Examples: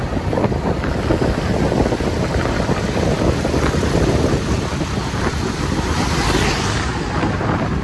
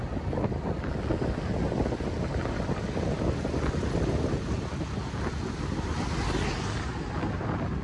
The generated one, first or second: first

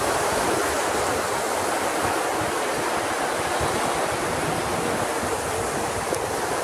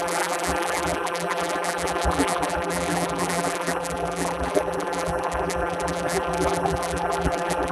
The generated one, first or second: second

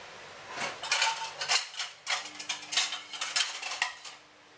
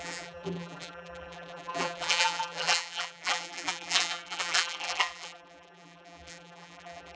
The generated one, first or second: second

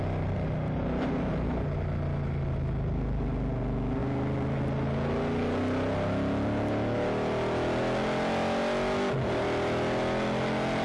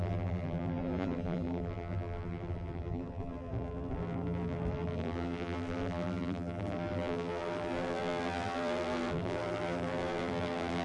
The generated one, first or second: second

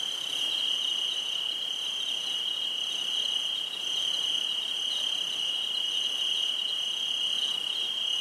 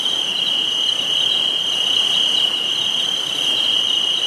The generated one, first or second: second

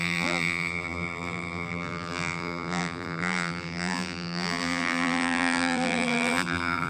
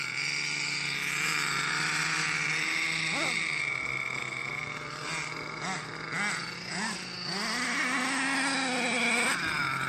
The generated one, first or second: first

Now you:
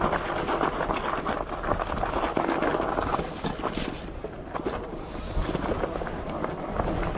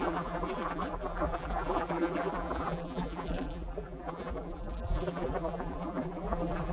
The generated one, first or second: second